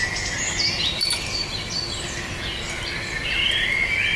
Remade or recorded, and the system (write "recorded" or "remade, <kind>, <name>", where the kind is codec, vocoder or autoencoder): recorded